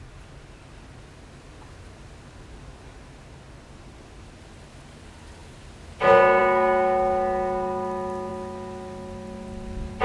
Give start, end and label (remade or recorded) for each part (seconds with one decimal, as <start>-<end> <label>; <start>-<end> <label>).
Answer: 0.0-10.0 recorded